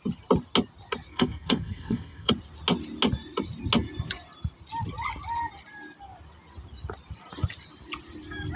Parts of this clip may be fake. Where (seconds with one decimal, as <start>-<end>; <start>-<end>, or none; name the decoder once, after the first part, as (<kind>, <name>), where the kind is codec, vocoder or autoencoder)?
1.1-2.3 (codec, SNAC)